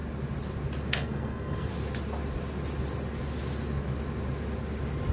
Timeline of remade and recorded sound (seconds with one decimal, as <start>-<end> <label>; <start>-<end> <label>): 0.0-0.9 recorded; 0.9-1.7 remade; 1.7-5.1 recorded

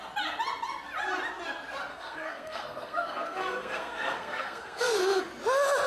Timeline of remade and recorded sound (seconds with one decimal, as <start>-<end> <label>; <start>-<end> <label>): 0.0-1.9 recorded; 1.9-5.2 remade; 5.2-5.9 recorded

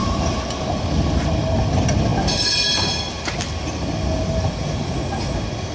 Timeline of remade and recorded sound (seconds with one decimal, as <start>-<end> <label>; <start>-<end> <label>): 0.0-5.7 recorded

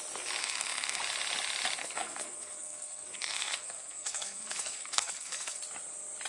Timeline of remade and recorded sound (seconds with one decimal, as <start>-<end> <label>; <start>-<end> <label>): 0.0-0.4 recorded; 0.4-1.0 remade; 1.0-1.8 recorded; 1.8-5.6 remade; 5.6-6.3 recorded

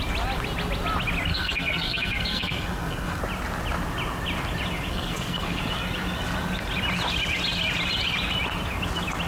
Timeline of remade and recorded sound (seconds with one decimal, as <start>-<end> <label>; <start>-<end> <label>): 0.0-1.3 recorded; 1.3-3.2 remade; 3.2-4.9 recorded; 4.9-5.6 remade; 5.6-9.3 recorded

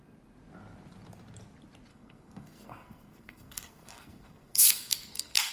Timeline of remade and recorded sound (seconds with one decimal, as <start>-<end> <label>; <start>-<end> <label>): 0.0-1.9 recorded; 1.9-5.5 remade

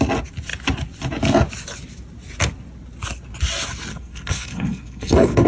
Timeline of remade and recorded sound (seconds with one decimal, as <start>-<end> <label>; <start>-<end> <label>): 0.0-3.9 recorded; 3.9-5.5 remade